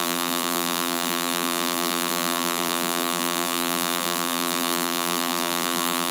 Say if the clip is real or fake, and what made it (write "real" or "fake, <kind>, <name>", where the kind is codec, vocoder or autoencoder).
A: fake, vocoder, BigVGAN v2